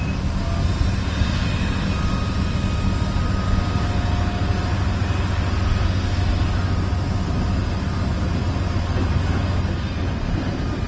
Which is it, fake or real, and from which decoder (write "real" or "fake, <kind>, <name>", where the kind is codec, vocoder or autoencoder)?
real